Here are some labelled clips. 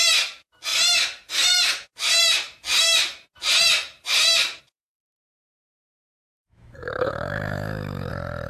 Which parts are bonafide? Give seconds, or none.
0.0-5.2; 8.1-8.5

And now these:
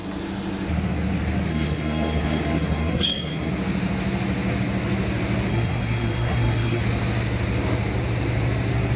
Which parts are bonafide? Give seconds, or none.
0.0-1.5; 3.5-5.5; 6.8-9.0

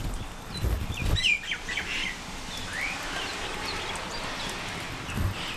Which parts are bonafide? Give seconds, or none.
0.0-5.6

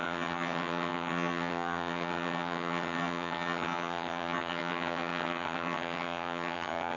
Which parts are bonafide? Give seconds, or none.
none

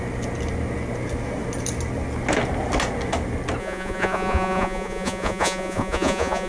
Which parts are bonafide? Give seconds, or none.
0.0-3.6

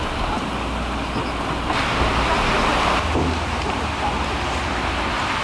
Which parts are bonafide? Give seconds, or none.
0.0-5.4